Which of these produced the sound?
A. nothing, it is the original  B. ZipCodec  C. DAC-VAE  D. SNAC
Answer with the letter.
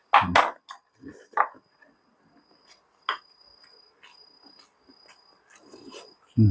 A